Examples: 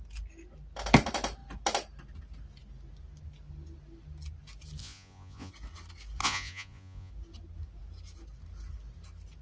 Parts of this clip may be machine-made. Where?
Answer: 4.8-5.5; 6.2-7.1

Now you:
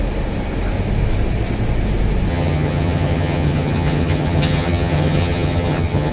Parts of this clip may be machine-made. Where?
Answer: 2.3-6.1

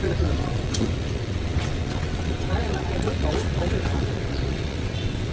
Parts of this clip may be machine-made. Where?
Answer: 0.0-5.3

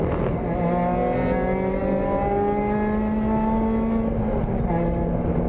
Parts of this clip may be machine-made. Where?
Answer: none

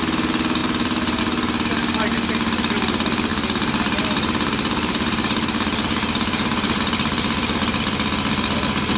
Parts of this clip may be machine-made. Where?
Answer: 0.6-1.2; 3.3-6.8

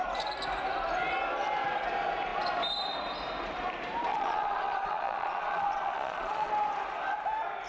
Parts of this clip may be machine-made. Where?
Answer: 4.1-6.5